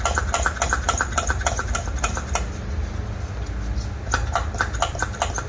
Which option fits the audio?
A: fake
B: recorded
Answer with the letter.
B